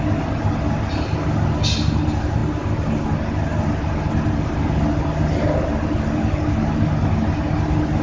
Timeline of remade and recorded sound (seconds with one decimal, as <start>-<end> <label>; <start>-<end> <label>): 0.0-8.0 recorded